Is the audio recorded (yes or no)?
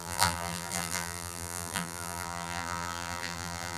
no